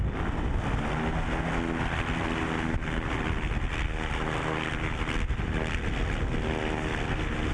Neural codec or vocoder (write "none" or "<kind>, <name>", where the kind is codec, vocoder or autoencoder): none